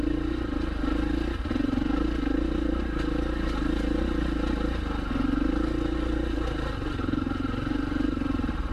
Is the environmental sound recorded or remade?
recorded